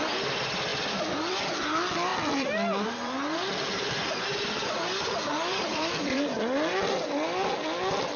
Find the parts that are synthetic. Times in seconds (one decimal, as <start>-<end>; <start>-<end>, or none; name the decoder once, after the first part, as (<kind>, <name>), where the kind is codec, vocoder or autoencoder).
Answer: 0.7-1.4 (vocoder, BigVGAN v2); 2.1-6.4